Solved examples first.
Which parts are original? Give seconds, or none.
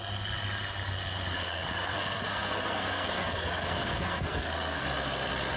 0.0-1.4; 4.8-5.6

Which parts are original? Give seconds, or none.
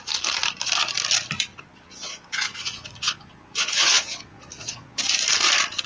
0.0-1.5; 5.0-5.9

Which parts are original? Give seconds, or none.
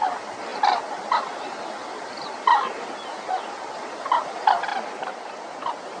0.0-6.0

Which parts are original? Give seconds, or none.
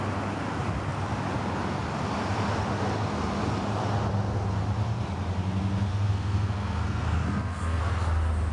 0.0-5.9; 7.8-8.5